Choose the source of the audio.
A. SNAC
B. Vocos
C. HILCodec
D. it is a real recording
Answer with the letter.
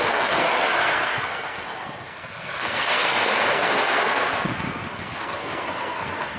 A